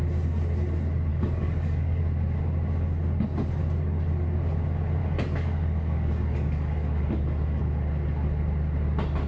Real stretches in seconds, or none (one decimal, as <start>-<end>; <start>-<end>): 0.0-1.1; 2.0-5.0; 7.6-9.3